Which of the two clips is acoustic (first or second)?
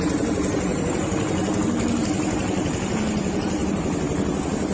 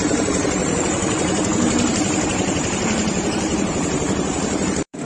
first